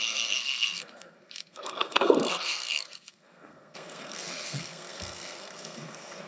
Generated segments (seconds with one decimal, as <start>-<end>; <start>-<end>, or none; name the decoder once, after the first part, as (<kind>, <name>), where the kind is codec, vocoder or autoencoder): 0.0-6.3 (codec, SNAC)